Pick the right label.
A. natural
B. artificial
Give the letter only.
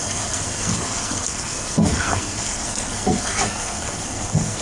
B